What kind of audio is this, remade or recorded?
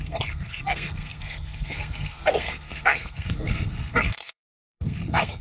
remade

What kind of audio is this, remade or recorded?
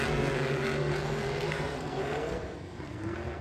remade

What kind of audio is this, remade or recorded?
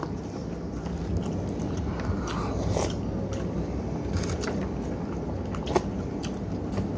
recorded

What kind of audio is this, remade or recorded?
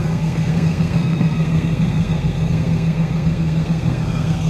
remade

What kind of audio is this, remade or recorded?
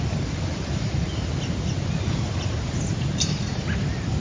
recorded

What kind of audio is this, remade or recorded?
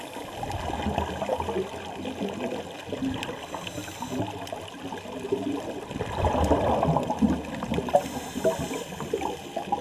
recorded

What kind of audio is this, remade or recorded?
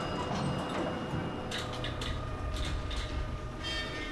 recorded